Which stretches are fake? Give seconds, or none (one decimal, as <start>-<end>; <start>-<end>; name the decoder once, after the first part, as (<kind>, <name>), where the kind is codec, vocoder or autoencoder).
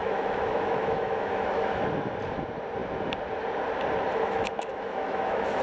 0.0-1.8 (autoencoder, DAC-VAE); 4.1-5.6